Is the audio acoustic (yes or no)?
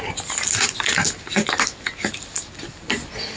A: yes